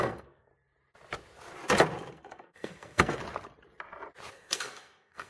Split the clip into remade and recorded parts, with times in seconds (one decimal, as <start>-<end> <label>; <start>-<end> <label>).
0.0-0.5 remade; 0.5-2.1 recorded; 2.1-3.2 remade; 3.2-4.3 recorded; 4.3-5.3 remade